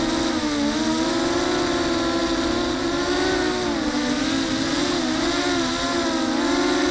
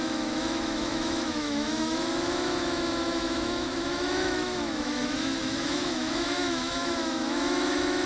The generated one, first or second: second